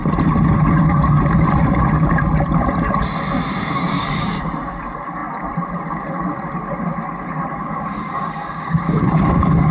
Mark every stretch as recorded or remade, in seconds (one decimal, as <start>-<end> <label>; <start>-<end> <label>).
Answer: 0.0-3.5 recorded; 3.5-4.1 remade; 4.1-7.6 recorded; 7.6-9.7 remade